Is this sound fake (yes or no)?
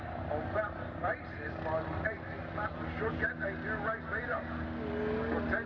no